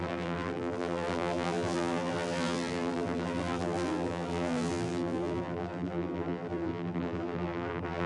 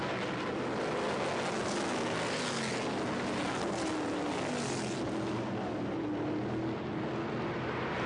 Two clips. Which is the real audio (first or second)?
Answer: second